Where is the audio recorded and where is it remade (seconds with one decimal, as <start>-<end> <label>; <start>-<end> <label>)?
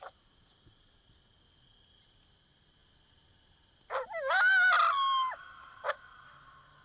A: 0.0-6.8 recorded